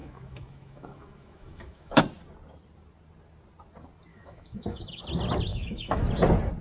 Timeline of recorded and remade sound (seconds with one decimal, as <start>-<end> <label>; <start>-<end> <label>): 0.0-2.0 remade; 2.0-4.1 recorded; 4.1-5.0 remade; 5.0-5.5 recorded; 5.5-6.1 remade; 6.1-6.6 recorded